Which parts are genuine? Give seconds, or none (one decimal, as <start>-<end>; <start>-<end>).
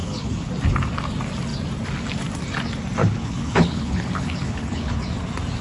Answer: 0.5-3.0; 5.0-5.6